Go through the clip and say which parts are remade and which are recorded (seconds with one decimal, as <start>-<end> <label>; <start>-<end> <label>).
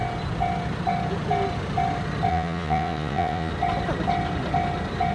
0.0-2.3 recorded; 2.3-3.5 remade; 3.5-5.1 recorded